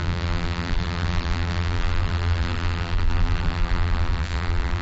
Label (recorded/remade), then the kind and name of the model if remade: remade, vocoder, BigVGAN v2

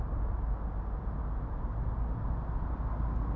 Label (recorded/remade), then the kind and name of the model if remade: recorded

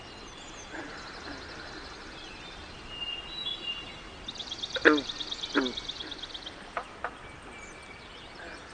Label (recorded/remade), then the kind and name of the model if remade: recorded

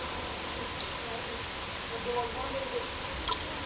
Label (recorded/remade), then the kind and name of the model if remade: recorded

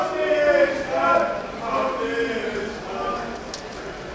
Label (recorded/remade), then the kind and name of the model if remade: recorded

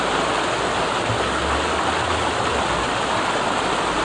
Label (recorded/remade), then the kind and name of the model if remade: recorded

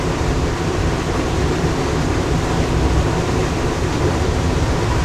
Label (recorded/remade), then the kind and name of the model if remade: remade, vocoder, BigVGAN v2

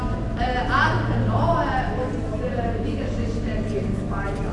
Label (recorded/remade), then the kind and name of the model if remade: remade, vocoder, BigVGAN v2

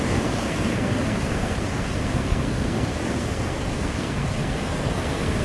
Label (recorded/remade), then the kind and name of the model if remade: remade, codec, SNAC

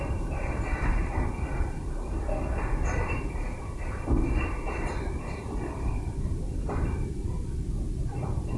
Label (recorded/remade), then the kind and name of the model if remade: remade, vocoder, BigVGAN v2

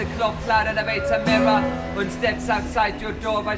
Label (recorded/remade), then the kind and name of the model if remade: recorded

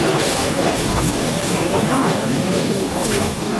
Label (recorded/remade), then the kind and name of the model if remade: remade, codec, DAC